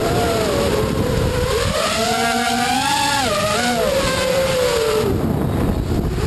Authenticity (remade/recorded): recorded